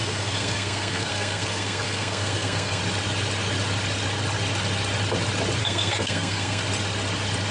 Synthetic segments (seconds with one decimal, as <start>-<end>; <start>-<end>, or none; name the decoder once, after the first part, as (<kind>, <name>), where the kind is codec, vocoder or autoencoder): 0.0-2.8 (codec, SNAC); 5.6-6.6